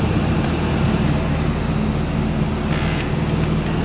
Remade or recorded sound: recorded